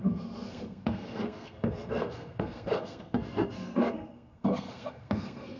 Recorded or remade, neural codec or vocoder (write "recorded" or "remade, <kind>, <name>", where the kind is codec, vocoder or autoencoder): remade, codec, SNAC